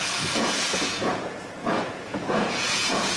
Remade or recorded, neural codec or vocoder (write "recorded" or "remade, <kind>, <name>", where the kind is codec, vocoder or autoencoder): remade, vocoder, Vocos